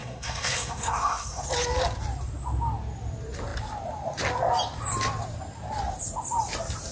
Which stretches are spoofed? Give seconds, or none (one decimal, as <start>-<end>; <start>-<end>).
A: 0.0-1.4